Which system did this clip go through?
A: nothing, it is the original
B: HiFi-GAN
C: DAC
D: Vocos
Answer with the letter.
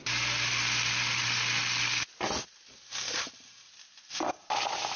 A